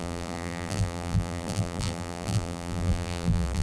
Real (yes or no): no